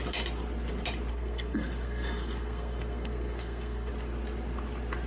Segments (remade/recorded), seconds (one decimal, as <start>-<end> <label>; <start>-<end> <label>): 0.0-1.1 recorded; 1.1-3.9 remade; 3.9-5.1 recorded